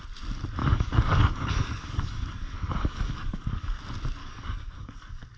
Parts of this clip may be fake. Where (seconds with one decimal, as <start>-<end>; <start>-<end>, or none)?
0.6-3.8; 4.2-5.4